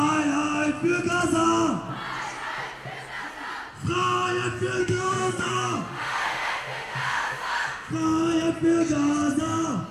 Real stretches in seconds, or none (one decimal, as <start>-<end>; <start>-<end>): 0.0-4.8; 7.9-9.9